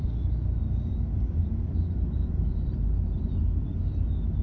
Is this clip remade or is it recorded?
remade